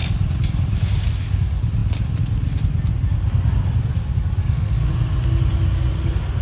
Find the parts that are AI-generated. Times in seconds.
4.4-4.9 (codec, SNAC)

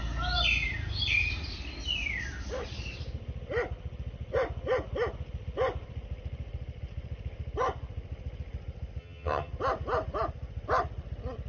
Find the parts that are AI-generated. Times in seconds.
9.0-9.5 (vocoder, HiFi-GAN)

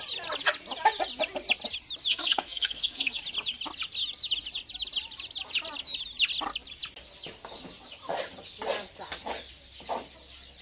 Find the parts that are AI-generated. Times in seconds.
2.1-3.2 (codec, SNAC)

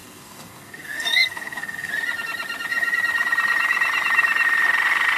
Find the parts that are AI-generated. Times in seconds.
0.0-1.9 (codec, SNAC)